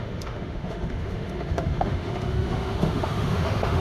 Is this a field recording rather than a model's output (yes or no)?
no